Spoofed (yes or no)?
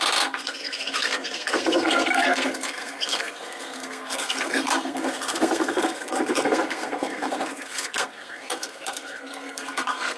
yes